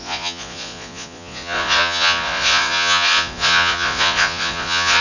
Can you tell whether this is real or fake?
fake